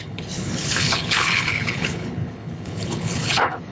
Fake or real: fake